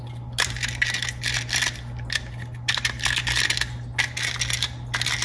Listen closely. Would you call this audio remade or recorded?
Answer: recorded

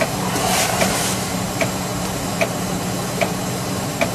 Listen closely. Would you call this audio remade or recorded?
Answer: remade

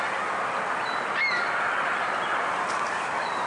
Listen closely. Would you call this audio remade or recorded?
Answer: recorded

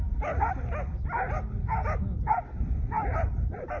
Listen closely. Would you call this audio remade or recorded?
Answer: recorded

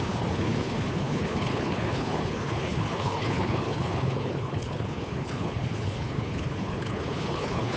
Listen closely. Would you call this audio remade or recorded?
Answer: remade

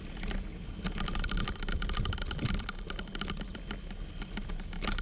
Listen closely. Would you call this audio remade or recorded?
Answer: recorded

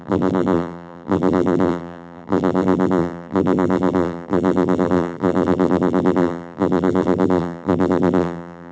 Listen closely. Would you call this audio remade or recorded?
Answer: remade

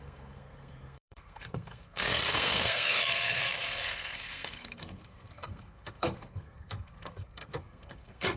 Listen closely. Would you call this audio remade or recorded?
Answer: remade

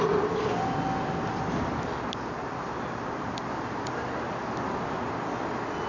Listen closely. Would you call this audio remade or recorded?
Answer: recorded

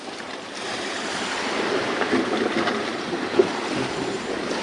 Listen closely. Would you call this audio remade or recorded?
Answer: remade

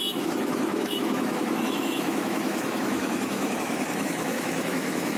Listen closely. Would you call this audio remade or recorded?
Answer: remade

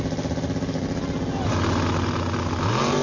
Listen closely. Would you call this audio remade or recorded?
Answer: recorded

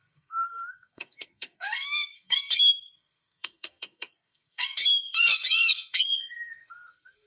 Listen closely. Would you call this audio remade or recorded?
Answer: remade